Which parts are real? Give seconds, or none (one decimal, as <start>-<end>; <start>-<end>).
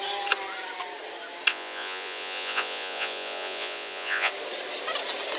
0.0-1.5; 4.3-5.4